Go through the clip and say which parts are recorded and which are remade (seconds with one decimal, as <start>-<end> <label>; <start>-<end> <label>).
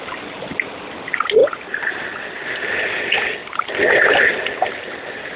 0.0-1.4 recorded; 1.4-1.9 remade; 1.9-3.4 recorded; 3.4-4.7 remade; 4.7-5.4 recorded